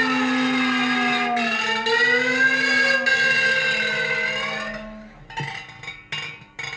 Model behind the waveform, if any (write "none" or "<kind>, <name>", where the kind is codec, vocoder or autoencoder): none